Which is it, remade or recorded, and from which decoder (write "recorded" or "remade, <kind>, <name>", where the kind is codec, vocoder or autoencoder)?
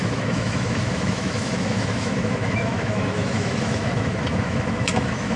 remade, autoencoder, DAC-VAE